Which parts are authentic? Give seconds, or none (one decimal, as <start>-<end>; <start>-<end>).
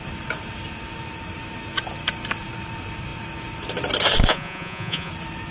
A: 0.0-4.3; 5.1-5.5